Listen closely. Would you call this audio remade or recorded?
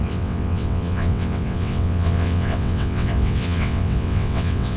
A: remade